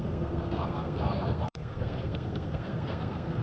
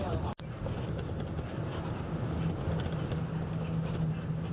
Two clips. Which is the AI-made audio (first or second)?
first